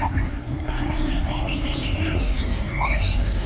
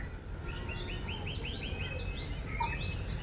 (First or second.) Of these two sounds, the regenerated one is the first